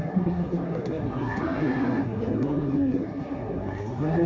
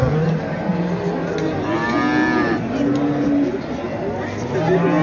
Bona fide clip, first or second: second